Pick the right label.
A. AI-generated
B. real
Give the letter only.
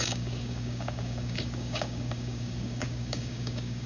A